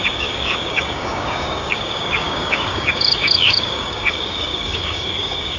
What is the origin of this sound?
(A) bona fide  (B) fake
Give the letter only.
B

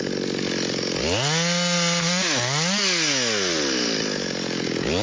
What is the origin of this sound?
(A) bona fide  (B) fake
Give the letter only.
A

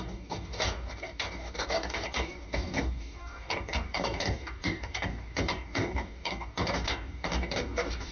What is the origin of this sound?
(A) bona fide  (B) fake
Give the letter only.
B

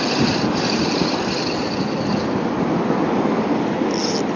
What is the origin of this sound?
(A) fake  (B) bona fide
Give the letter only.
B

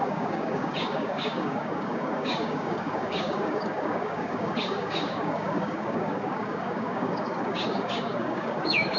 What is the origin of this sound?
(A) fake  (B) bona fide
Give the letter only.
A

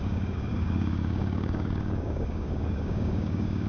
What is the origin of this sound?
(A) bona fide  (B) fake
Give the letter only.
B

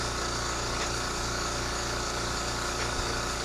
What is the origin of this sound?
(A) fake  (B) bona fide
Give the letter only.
A